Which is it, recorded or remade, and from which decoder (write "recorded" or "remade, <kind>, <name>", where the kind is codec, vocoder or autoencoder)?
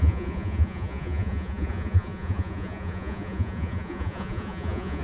remade, vocoder, Vocos